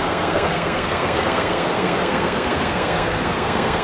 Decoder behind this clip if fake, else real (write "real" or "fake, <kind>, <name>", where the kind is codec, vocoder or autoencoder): fake, codec, SNAC